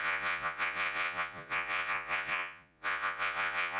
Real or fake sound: fake